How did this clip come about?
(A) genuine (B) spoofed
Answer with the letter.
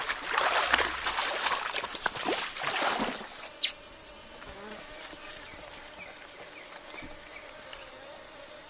A